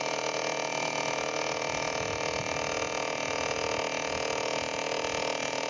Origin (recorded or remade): remade